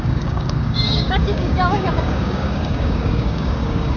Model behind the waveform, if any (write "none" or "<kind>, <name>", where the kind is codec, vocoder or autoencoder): codec, DAC